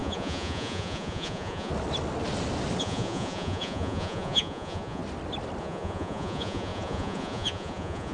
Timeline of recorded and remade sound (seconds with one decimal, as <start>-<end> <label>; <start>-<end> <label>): 0.0-1.7 remade; 1.7-2.8 recorded; 2.8-5.0 remade; 5.0-5.6 recorded; 5.6-8.1 remade